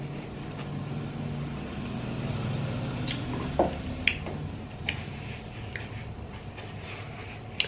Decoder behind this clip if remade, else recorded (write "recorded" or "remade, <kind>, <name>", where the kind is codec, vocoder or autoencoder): recorded